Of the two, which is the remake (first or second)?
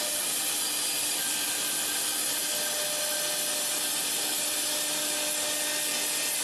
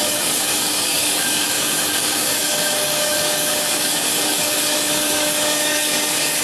second